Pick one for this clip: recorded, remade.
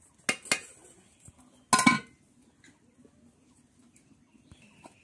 recorded